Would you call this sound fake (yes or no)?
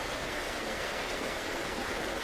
yes